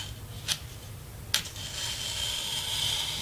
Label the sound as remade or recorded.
recorded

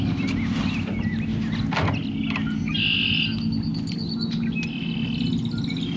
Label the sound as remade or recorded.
recorded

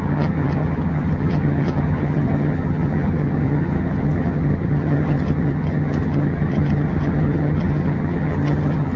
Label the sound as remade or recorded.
remade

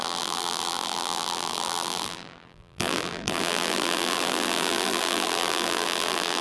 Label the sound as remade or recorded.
remade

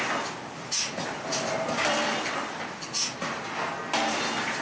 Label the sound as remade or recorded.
recorded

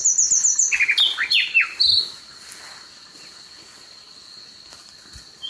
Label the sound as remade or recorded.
recorded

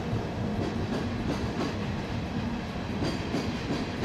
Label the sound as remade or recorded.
recorded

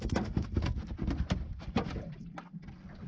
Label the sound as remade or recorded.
recorded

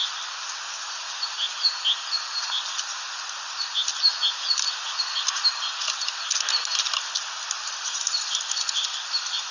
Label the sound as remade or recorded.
recorded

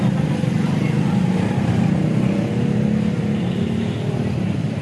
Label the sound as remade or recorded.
recorded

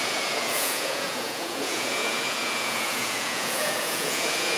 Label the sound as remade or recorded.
remade